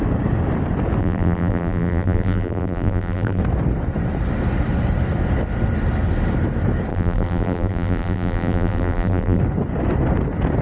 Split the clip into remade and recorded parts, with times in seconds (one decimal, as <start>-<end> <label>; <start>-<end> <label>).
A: 0.0-1.0 recorded; 1.0-3.4 remade; 3.4-6.9 recorded; 6.9-9.4 remade; 9.4-10.6 recorded